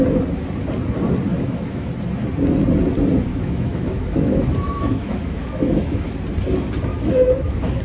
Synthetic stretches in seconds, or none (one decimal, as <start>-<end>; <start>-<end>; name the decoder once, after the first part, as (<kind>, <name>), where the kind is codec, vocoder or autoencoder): 1.3-1.9 (autoencoder, DAC-VAE); 3.3-6.1; 6.9-7.8